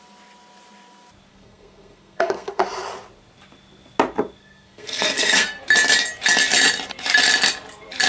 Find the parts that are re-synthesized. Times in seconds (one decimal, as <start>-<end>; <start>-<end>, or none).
1.3-2.6; 4.4-5.6

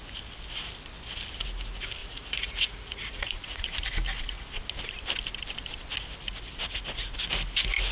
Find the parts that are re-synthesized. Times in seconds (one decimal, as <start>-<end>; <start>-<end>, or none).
2.0-3.8

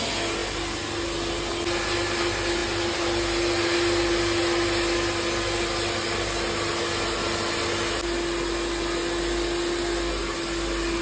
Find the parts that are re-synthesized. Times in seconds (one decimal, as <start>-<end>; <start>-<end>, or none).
none

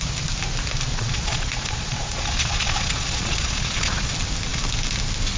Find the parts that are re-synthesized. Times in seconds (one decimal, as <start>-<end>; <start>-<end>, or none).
0.9-4.1

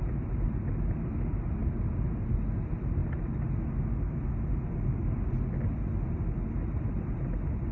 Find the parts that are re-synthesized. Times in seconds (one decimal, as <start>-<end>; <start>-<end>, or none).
none

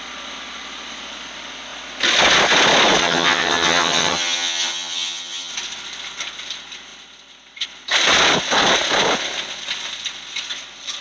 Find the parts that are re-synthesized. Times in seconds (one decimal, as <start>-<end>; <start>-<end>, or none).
3.0-5.5

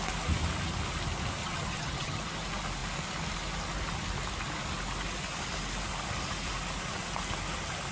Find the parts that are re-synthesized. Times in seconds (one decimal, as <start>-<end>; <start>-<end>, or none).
1.4-2.2